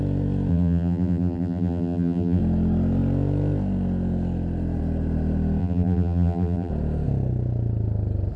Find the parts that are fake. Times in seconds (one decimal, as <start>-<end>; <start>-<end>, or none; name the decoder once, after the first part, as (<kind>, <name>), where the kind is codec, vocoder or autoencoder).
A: 0.5-2.4 (vocoder, BigVGAN v2); 5.6-6.7